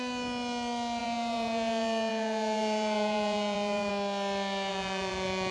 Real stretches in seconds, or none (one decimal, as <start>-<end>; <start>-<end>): 0.0-1.0; 3.9-4.7